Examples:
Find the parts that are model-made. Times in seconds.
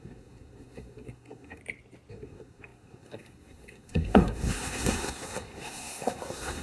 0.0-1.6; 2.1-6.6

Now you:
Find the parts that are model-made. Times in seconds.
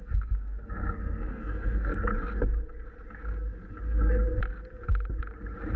0.0-1.9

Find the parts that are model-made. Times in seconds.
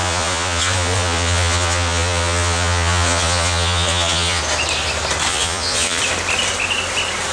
0.0-4.4; 5.3-6.0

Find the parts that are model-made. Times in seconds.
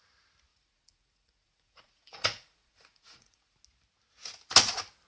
0.5-3.6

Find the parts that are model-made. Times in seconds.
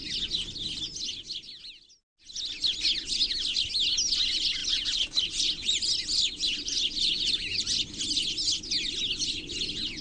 4.6-8.0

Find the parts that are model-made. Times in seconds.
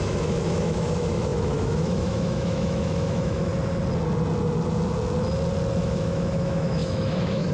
0.0-3.5; 5.8-7.5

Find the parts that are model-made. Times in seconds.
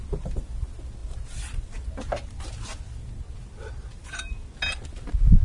none